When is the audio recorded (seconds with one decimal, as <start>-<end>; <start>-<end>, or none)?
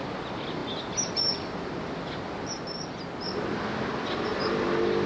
0.0-5.1